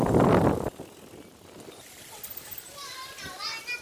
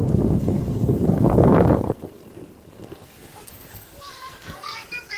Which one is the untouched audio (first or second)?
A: first